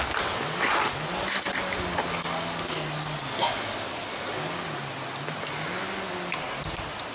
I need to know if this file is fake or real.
real